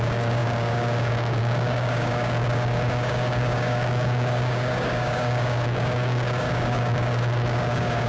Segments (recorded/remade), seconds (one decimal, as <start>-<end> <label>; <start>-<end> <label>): 0.0-8.1 remade